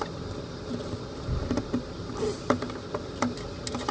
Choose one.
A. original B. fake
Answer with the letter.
A